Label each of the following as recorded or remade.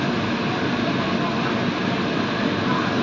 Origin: recorded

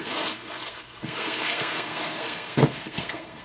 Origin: remade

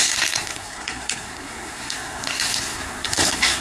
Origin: remade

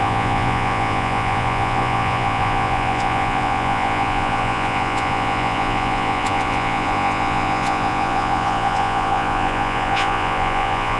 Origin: remade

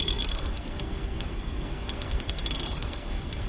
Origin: remade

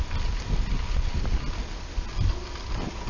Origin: recorded